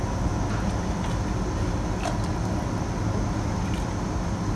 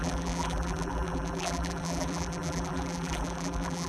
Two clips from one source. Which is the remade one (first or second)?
second